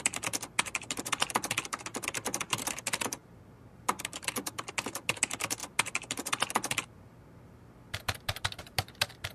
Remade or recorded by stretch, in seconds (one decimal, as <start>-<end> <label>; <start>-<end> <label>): 0.0-9.3 recorded